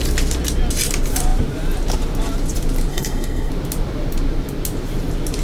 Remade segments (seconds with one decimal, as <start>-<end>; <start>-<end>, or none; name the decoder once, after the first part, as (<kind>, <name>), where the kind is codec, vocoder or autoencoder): 2.9-3.5 (codec, SNAC)